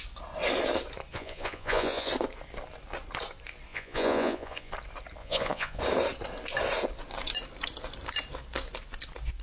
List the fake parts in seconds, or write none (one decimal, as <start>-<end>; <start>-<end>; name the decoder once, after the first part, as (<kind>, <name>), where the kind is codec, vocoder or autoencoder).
1.1-2.1 (vocoder, Vocos); 3.7-4.7; 5.2-5.8